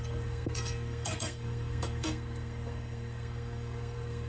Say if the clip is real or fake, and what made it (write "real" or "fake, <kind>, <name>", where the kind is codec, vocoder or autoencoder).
fake, codec, SNAC